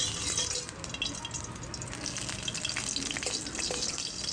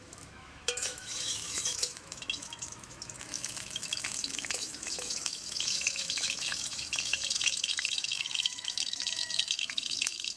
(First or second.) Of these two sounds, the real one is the first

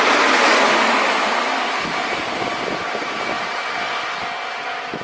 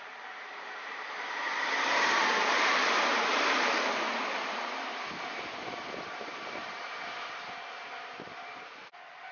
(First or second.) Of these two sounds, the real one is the first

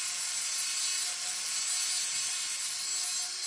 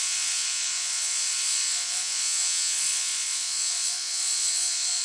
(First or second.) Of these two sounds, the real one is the first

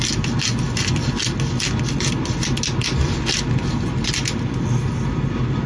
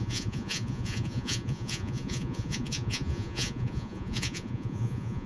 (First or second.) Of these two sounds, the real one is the first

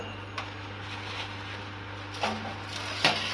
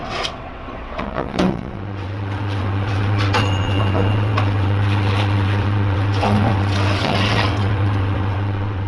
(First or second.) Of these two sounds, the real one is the first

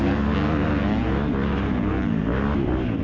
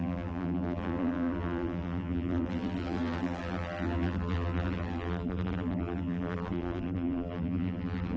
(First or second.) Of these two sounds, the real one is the first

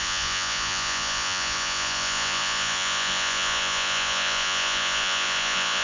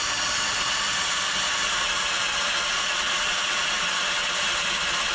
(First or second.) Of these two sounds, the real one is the second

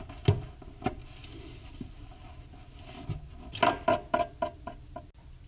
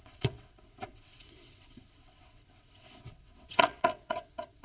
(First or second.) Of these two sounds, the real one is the first